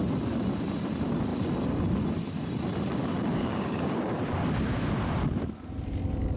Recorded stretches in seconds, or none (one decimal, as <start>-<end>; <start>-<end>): 0.0-3.3; 4.0-6.4

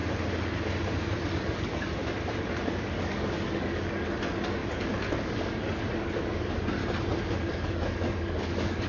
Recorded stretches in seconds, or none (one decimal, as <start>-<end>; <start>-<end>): 0.0-1.3; 1.9-2.4; 6.8-7.5

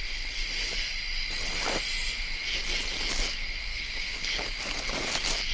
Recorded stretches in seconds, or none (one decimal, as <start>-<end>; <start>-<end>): 0.0-3.7; 4.6-5.5

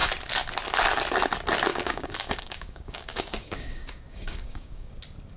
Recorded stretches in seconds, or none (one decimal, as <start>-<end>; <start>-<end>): 0.0-1.7; 4.9-5.4